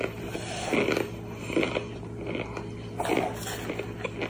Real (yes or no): yes